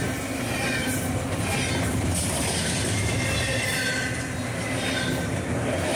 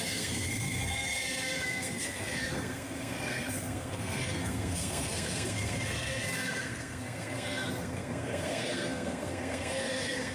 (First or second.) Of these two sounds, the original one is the first